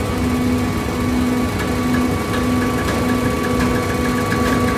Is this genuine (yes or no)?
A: yes